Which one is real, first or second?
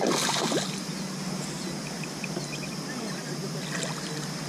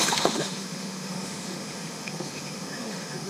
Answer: first